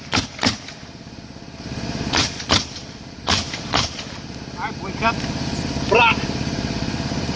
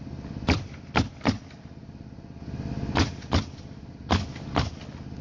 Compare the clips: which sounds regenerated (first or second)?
first